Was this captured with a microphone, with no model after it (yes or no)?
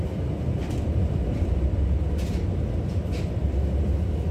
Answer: no